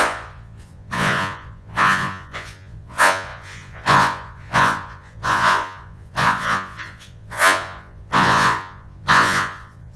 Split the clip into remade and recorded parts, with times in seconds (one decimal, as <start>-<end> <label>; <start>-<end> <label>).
0.0-10.0 remade